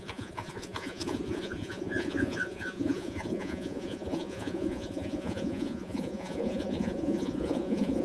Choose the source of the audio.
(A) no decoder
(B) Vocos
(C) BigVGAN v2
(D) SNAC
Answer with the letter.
B